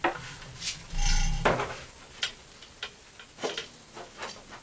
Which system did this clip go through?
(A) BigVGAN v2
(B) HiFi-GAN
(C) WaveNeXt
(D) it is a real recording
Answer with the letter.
D